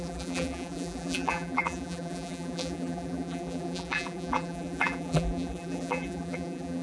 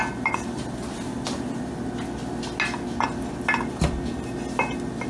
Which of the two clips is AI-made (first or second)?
first